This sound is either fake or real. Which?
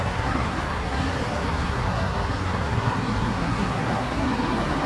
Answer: fake